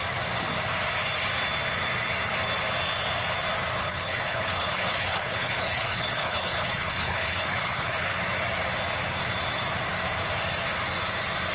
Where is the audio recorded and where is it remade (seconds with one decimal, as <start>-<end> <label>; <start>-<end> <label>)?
0.0-3.8 recorded; 3.8-8.1 remade; 8.1-11.5 recorded